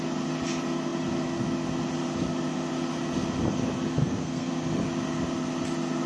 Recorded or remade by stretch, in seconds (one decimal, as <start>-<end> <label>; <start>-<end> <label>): 0.0-4.0 recorded; 4.0-4.5 remade; 4.5-6.1 recorded